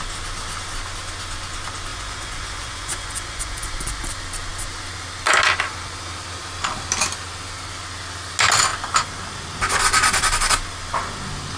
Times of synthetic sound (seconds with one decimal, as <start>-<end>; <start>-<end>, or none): 1.9-4.1